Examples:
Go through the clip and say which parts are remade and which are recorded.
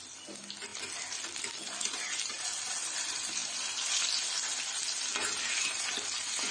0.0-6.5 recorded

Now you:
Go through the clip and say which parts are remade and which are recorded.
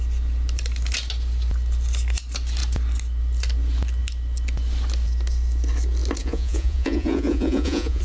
0.0-6.2 recorded; 6.2-8.0 remade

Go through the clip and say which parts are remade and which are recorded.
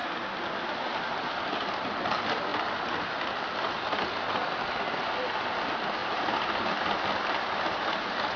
0.0-8.4 recorded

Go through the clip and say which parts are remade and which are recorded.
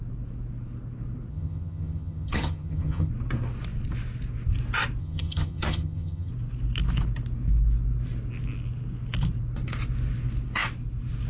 0.0-1.3 recorded; 1.3-3.1 remade; 3.1-5.0 recorded; 5.0-6.3 remade; 6.3-11.3 recorded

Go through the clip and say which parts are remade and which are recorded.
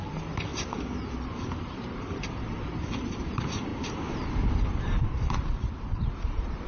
0.0-0.5 remade; 0.5-1.1 recorded; 1.1-3.7 remade; 3.7-4.8 recorded; 4.8-6.7 remade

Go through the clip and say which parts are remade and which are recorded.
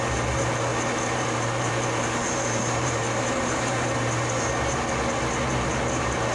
0.0-0.7 recorded; 0.7-4.5 remade; 4.5-6.3 recorded